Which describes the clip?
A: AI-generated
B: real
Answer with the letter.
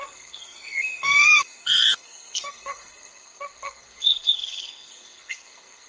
A